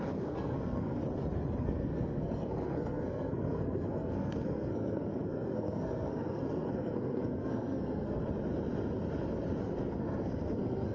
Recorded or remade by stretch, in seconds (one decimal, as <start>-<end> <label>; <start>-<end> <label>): 0.0-1.0 remade; 1.0-1.6 recorded; 1.6-8.2 remade; 8.2-9.6 recorded; 9.6-10.9 remade